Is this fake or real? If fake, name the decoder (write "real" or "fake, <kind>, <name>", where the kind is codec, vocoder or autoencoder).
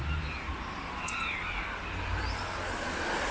real